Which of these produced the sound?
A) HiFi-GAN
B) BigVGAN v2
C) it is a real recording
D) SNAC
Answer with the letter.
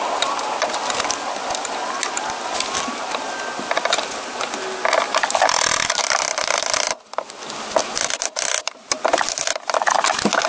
C